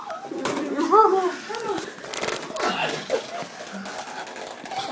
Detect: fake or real real